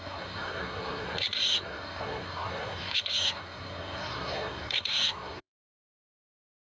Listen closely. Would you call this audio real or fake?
fake